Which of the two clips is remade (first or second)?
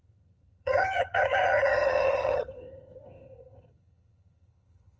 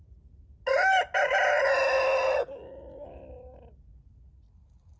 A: first